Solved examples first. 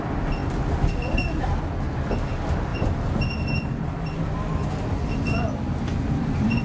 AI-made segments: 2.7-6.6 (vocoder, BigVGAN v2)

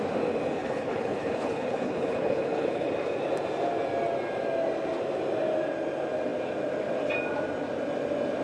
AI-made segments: 0.6-2.9 (codec, HILCodec)

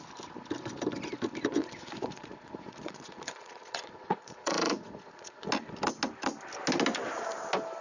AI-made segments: 1.6-5.5 (vocoder, Vocos)

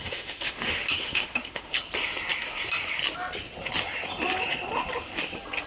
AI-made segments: 0.0-1.8 (autoencoder, DAC-VAE)

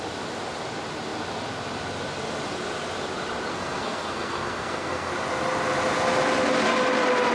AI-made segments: 3.5-5.1 (codec, SNAC)

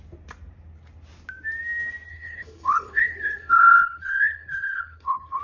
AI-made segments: 2.1-5.4 (codec, HILCodec)

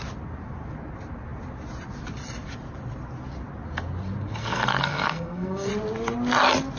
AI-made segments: 4.4-5.7 (codec, SNAC)

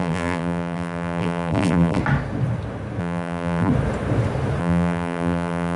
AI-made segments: 0.0-2.0 (vocoder, BigVGAN v2); 3.0-3.7; 4.6-5.8